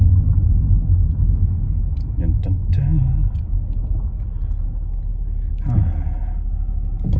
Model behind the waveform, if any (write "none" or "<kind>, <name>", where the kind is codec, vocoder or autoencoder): none